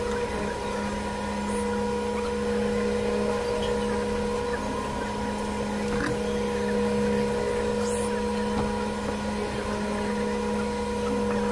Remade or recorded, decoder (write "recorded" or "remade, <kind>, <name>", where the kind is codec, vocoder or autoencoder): recorded